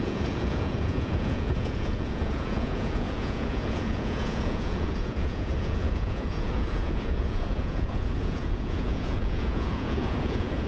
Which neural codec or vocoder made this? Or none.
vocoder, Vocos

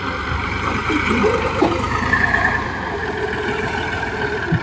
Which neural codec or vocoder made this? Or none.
vocoder, BigVGAN v2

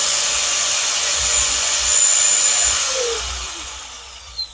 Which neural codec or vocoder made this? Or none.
vocoder, Vocos